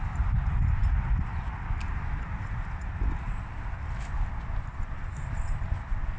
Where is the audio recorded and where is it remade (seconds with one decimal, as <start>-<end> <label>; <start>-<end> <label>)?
0.0-6.2 recorded